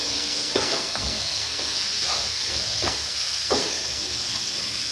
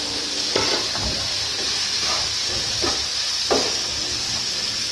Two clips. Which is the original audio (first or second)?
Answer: second